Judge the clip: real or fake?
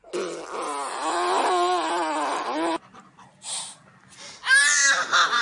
real